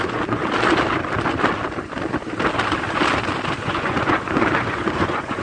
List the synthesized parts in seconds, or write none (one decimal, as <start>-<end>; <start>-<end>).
0.0-0.4; 3.6-5.4